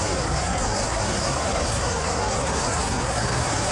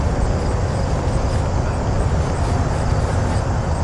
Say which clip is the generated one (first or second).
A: first